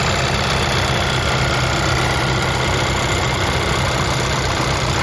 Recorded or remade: recorded